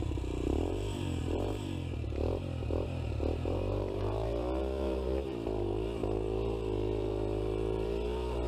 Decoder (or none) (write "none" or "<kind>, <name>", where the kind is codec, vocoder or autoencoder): vocoder, BigVGAN v2